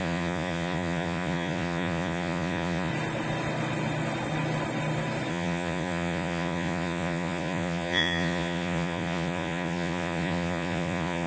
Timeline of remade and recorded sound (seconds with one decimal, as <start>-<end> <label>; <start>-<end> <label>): 0.0-2.9 remade; 2.9-5.3 recorded; 5.3-11.3 remade